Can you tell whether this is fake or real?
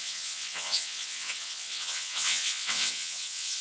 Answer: fake